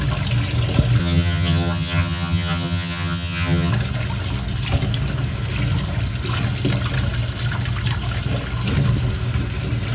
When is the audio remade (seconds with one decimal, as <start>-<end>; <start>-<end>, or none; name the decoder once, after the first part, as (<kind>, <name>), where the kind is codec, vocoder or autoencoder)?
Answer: 1.0-3.7 (vocoder, HiFi-GAN)